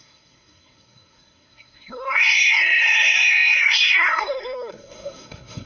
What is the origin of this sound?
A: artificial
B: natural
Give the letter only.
A